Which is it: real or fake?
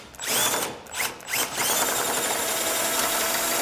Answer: real